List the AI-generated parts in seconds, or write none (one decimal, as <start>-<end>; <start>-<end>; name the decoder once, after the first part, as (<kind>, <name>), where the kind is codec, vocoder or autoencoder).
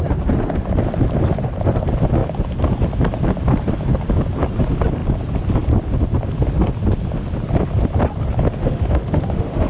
8.6-9.7 (autoencoder, DAC-VAE)